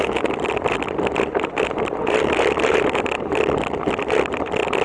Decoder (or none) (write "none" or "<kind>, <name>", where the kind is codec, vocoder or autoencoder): vocoder, BigVGAN v2